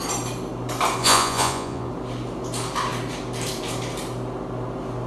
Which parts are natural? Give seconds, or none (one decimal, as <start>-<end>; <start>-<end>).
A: 0.0-1.0; 1.9-5.1